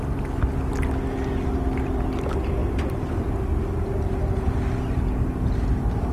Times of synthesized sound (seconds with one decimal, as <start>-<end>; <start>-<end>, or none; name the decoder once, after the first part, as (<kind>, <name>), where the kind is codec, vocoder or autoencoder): none